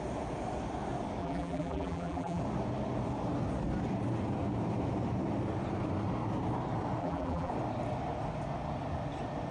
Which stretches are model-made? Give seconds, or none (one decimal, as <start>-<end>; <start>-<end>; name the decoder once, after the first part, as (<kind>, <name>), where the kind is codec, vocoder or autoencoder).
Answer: 1.2-2.4 (vocoder, BigVGAN v2); 7.0-7.5

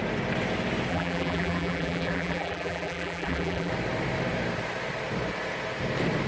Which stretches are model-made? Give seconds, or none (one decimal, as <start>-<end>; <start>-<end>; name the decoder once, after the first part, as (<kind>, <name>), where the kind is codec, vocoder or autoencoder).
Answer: 0.9-3.7 (vocoder, BigVGAN v2)

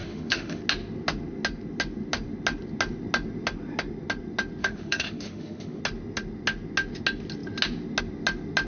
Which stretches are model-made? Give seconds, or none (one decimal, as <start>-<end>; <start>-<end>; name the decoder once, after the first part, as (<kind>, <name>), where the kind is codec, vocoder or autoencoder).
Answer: 0.0-0.6 (autoencoder, DAC-VAE); 4.6-5.8

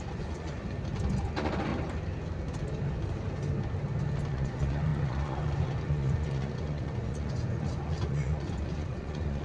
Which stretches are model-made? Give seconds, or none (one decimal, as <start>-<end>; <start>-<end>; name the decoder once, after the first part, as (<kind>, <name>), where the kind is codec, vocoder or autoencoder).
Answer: 0.0-0.6 (vocoder, Vocos); 1.2-1.7; 4.3-9.4

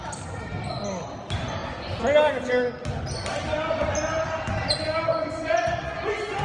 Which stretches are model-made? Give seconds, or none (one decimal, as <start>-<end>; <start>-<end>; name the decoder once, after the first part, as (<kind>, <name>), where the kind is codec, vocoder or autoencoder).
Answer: 5.1-6.4 (vocoder, Vocos)

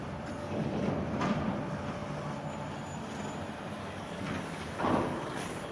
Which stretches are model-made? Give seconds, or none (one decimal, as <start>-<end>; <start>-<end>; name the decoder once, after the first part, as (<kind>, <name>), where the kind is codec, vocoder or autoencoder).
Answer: 0.4-0.9 (codec, DAC); 3.8-5.7

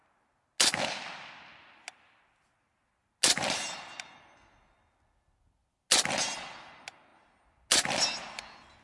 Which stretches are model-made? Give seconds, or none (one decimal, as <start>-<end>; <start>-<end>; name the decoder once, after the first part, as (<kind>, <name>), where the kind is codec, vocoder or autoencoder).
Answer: none

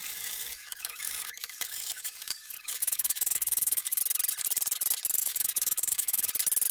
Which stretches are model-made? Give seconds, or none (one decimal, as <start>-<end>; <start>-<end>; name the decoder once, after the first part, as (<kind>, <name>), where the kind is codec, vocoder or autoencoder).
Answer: 0.0-4.0 (codec, DAC); 5.2-6.3